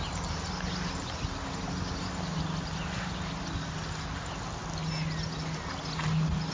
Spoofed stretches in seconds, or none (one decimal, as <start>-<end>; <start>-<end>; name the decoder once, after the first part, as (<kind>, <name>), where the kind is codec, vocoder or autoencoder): none